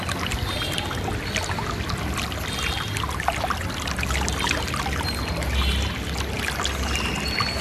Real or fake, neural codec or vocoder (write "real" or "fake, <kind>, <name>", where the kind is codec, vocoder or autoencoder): real